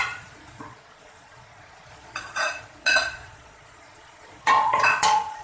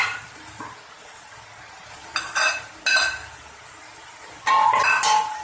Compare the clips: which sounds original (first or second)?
second